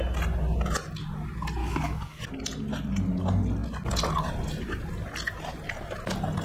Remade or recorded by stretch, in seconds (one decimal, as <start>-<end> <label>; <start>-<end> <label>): 0.0-1.6 recorded; 1.6-2.2 remade; 2.2-6.4 recorded